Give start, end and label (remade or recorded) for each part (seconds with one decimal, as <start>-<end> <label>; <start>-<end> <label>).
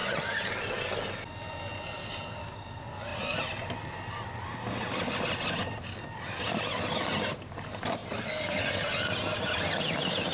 0.0-0.5 remade; 0.5-10.3 recorded